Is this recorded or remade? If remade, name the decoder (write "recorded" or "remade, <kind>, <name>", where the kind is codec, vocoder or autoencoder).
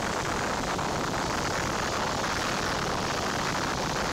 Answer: recorded